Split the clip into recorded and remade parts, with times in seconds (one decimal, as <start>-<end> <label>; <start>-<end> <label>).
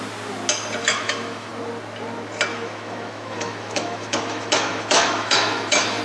0.0-0.8 recorded; 0.8-1.5 remade; 1.5-2.5 recorded; 2.5-6.0 remade